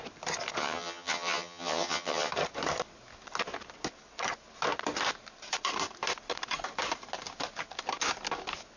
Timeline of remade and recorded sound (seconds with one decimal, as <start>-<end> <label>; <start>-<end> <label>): 0.0-0.6 recorded; 0.6-2.3 remade; 2.3-8.8 recorded